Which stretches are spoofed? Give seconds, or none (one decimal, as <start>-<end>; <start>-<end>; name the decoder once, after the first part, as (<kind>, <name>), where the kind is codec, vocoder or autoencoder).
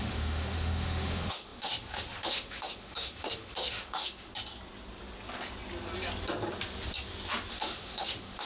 0.0-4.3 (autoencoder, DAC-VAE); 7.5-8.5